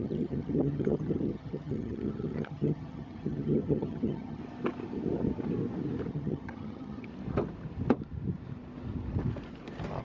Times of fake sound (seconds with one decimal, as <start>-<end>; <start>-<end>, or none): 0.0-4.4; 6.1-7.1